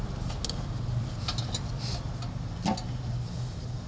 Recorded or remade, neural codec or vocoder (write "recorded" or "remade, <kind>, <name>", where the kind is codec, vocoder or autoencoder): recorded